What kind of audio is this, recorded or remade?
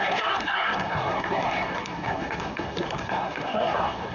remade